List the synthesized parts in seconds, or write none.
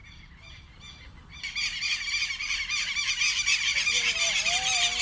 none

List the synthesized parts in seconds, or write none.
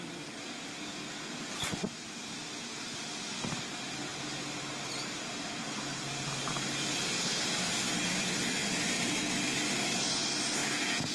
10.6-11.1 (vocoder, Vocos)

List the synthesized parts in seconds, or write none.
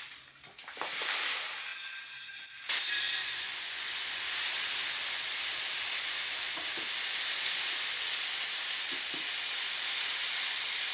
1.7-2.5 (vocoder, Vocos); 3.2-4.2